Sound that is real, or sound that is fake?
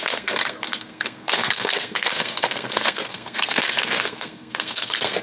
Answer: fake